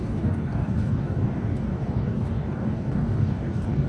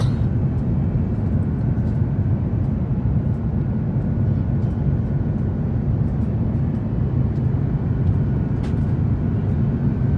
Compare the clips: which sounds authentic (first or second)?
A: second